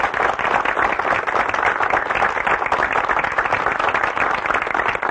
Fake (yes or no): no